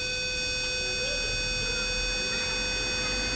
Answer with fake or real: real